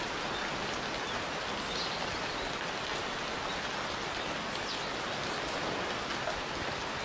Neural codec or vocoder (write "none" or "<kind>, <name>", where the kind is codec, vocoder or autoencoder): none